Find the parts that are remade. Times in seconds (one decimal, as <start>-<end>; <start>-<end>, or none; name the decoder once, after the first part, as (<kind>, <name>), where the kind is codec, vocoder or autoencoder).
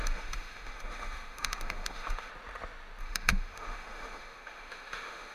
0.0-2.3 (autoencoder, DAC-VAE); 3.0-5.3